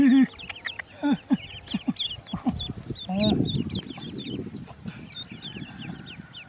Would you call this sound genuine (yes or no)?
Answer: yes